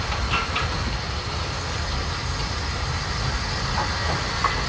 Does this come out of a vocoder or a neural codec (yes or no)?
no